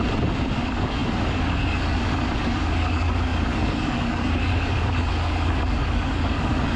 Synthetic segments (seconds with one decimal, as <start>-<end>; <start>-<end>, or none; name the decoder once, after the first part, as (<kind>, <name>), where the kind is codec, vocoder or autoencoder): 0.6-6.8 (codec, DAC)